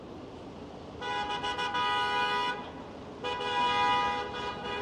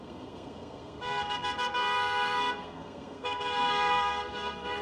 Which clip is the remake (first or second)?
second